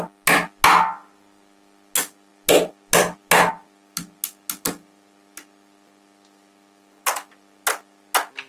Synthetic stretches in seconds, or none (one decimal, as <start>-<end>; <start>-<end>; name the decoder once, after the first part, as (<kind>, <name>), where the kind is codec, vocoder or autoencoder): none